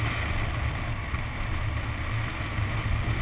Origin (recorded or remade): recorded